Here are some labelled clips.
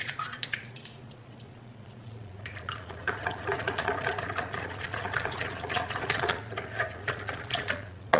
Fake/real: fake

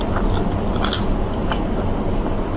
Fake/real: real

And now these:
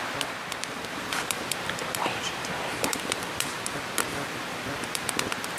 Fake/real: fake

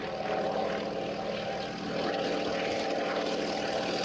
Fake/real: real